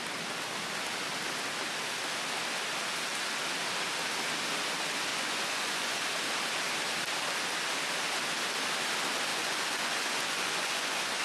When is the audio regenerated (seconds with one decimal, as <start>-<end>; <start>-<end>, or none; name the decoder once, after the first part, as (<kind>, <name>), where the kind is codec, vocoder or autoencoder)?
5.1-6.0 (vocoder, Vocos); 9.3-11.2